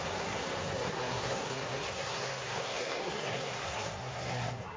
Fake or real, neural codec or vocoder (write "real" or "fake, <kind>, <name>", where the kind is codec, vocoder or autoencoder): fake, codec, SNAC